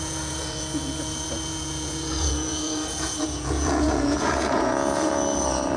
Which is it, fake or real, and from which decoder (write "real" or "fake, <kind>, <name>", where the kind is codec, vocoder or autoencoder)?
fake, vocoder, Vocos